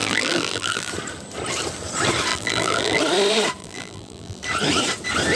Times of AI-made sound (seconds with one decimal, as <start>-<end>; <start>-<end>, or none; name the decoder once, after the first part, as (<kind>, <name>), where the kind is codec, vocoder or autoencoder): 0.0-0.9 (vocoder, BigVGAN v2); 2.3-3.0; 3.6-4.4